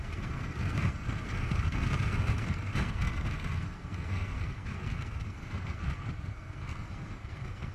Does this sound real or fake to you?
fake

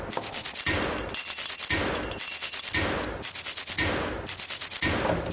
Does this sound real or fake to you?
real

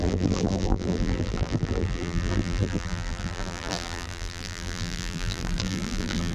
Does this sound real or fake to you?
fake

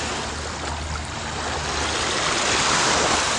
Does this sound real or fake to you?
real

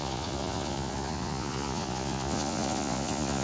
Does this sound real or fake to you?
fake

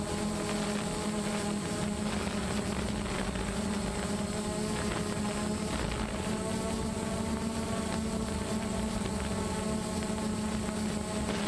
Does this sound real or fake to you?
real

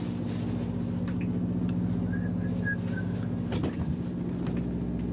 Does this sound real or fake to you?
real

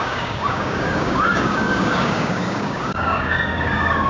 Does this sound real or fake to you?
fake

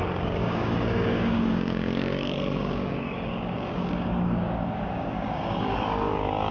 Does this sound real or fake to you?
fake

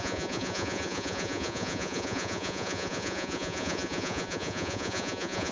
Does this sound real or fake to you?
fake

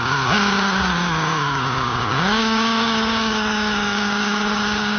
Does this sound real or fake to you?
fake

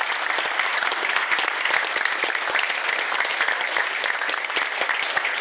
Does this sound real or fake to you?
real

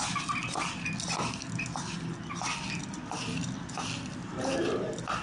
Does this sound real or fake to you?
real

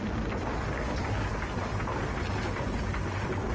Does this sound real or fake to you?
real